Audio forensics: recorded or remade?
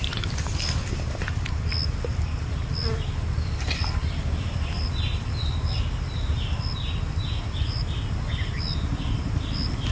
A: recorded